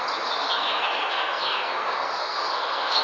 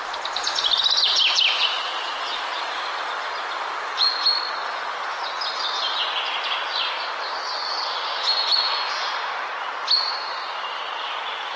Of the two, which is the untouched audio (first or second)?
second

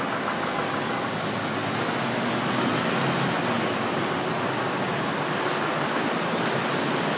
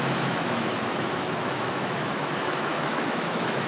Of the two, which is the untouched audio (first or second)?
first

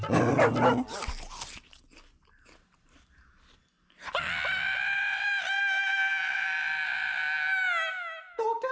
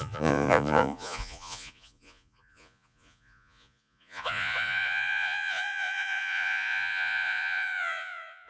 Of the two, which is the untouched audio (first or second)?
first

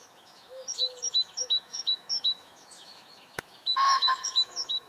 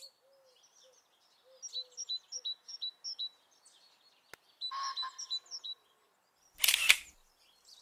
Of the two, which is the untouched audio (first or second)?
second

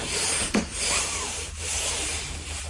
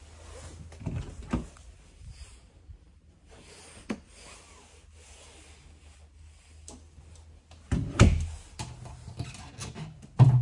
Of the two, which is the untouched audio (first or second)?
second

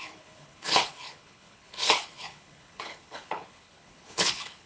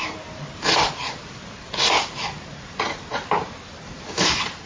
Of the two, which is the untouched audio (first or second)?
second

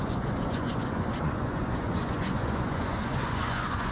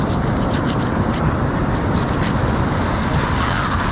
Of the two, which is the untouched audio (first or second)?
second